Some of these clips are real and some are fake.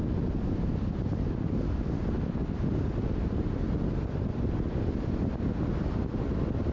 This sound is real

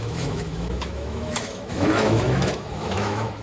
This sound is fake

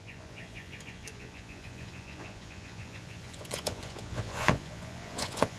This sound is fake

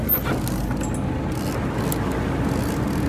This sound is real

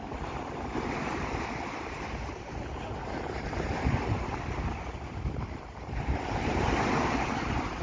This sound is real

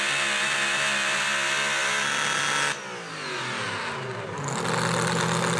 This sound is real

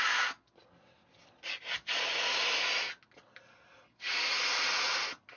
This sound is real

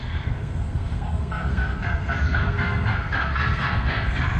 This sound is fake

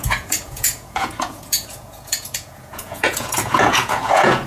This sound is fake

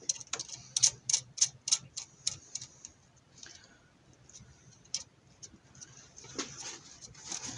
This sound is real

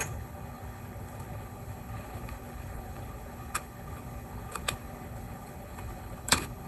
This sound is fake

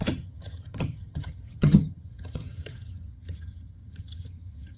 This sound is fake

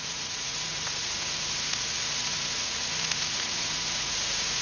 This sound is fake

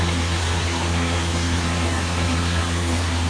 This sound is fake